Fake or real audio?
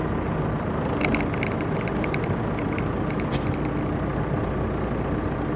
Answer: real